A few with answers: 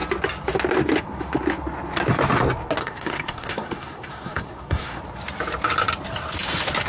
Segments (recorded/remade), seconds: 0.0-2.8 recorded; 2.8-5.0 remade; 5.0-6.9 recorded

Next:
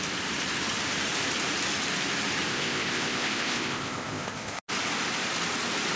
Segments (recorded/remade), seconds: 0.0-2.5 recorded; 2.5-4.6 remade; 4.6-6.0 recorded

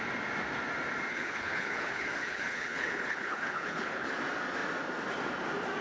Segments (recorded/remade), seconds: 0.0-1.1 recorded; 1.1-4.1 remade; 4.1-5.8 recorded

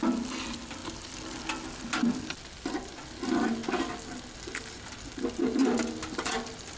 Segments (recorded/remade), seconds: 0.0-6.8 recorded

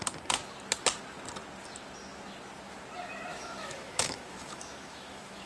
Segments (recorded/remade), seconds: 0.0-3.3 recorded; 3.3-5.5 remade

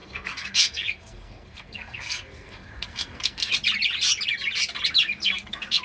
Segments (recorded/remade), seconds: 0.0-3.5 remade; 3.5-5.2 recorded; 5.2-5.8 remade

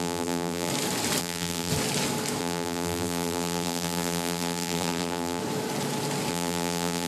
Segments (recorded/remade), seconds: 0.0-0.7 remade; 0.7-1.2 recorded; 1.2-1.7 remade; 1.7-2.4 recorded; 2.4-5.4 remade; 5.4-6.3 recorded; 6.3-7.1 remade

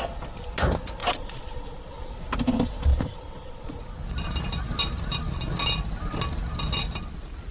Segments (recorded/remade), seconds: 0.0-1.0 recorded; 1.0-2.1 remade; 2.1-2.9 recorded; 2.9-3.8 remade; 3.8-7.5 recorded